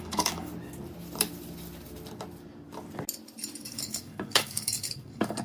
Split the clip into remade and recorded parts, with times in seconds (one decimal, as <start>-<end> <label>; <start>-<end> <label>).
0.0-0.5 remade; 0.5-3.7 recorded; 3.7-5.4 remade